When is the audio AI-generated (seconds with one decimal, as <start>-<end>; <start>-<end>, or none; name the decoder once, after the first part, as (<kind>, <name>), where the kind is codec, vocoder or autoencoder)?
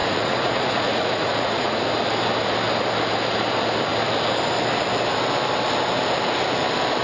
0.0-1.8 (vocoder, Vocos)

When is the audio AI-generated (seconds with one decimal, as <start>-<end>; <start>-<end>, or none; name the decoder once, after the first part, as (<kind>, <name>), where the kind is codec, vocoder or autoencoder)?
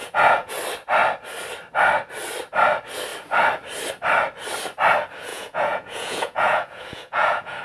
0.0-0.5 (vocoder, Vocos); 5.3-7.6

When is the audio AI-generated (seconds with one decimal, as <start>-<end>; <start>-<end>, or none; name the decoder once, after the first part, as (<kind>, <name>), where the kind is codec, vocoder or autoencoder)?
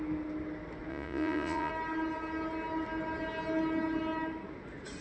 0.9-1.7 (vocoder, Vocos)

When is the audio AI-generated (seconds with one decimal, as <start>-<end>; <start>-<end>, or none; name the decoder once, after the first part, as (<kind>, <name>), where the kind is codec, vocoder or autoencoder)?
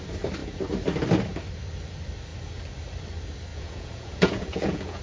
3.5-5.0 (vocoder, Vocos)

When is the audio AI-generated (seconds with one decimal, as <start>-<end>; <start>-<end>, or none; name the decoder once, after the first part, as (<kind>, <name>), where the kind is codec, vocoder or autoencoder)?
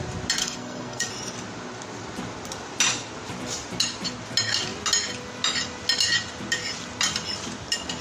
0.4-1.1 (codec, SNAC)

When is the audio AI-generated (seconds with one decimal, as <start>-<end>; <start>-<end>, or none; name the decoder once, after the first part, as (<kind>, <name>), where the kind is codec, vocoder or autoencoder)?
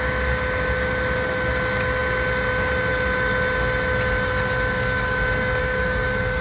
5.6-6.4 (codec, DAC)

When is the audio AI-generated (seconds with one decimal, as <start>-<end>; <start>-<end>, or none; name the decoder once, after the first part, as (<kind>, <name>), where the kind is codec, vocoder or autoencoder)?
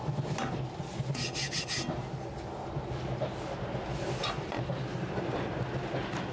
3.9-5.6 (vocoder, BigVGAN v2)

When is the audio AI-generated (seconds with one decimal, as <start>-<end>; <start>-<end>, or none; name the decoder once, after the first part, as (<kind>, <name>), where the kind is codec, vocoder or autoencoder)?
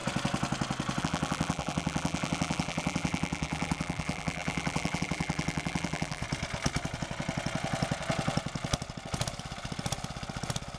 1.0-6.2 (vocoder, BigVGAN v2)